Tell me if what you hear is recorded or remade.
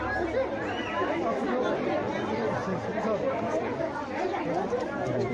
recorded